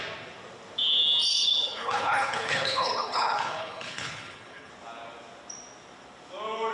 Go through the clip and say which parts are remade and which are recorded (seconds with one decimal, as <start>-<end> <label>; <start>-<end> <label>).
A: 0.0-1.3 recorded; 1.3-4.7 remade; 4.7-6.7 recorded

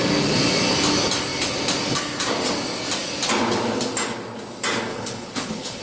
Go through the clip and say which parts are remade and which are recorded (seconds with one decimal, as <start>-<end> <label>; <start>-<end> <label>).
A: 0.0-4.9 recorded; 4.9-5.8 remade

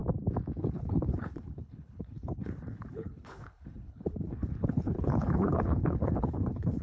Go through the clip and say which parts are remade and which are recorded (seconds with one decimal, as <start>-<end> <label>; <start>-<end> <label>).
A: 0.0-0.6 recorded; 0.6-6.8 remade